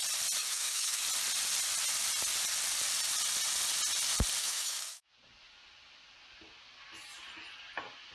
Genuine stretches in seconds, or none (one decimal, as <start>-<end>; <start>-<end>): 0.0-0.4; 1.0-4.4; 5.1-8.1